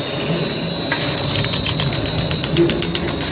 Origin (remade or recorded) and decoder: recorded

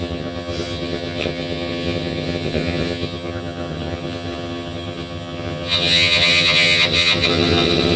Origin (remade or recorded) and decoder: remade, vocoder, HiFi-GAN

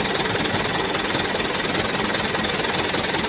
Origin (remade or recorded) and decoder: recorded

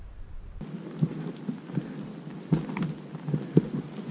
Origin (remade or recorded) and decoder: recorded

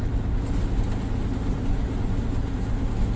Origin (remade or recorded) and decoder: recorded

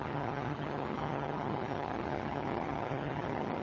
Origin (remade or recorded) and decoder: remade, vocoder, HiFi-GAN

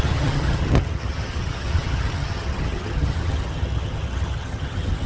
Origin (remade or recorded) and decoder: remade, vocoder, HiFi-GAN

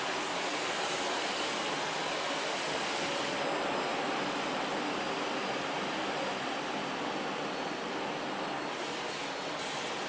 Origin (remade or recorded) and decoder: recorded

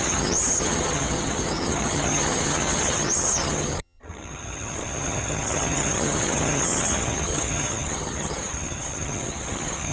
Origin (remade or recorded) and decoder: remade, vocoder, HiFi-GAN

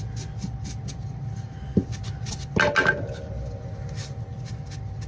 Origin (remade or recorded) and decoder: recorded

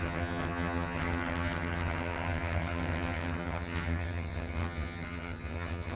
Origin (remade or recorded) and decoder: remade, vocoder, HiFi-GAN